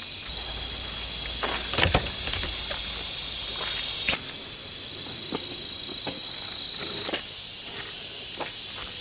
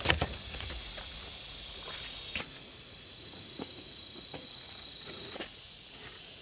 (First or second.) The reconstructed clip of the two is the second